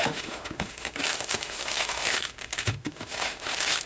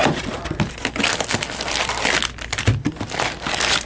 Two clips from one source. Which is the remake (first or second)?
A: first